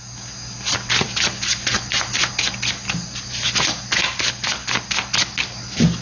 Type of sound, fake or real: real